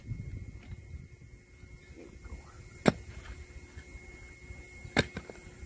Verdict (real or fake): real